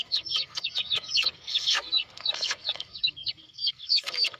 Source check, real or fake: fake